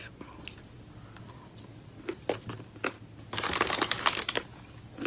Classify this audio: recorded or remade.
recorded